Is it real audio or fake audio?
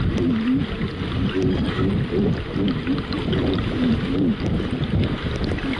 real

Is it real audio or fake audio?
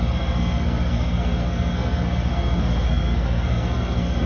fake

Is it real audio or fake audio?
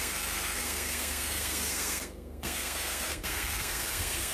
fake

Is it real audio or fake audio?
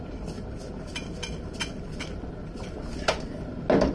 real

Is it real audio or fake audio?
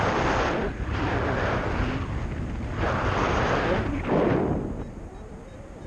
real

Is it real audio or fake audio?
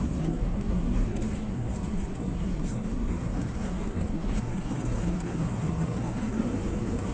fake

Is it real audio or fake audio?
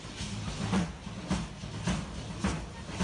real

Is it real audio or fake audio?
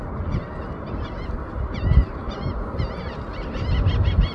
real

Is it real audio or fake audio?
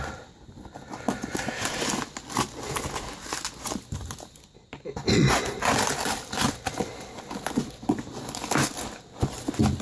real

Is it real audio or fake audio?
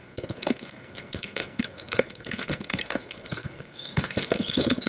fake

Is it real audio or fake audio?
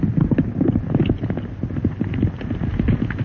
real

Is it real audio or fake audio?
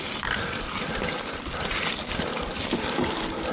real